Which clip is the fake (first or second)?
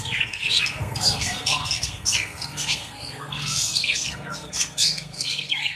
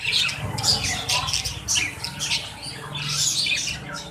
first